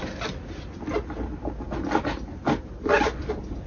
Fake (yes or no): no